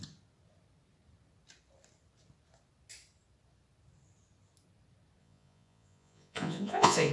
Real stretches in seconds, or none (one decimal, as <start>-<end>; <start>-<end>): 0.0-5.2